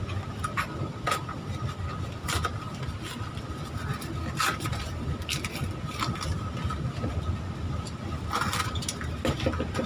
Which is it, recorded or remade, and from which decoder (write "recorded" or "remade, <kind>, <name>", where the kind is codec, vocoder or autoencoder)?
recorded